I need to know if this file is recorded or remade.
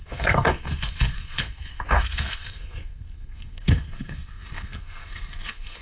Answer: remade